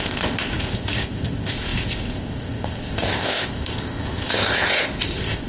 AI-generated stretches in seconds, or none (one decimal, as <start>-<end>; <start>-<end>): 0.0-5.5